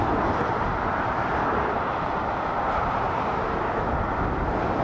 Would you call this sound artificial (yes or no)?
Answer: no